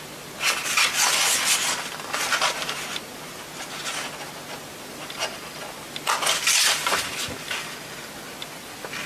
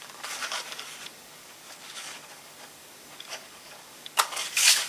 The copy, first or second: second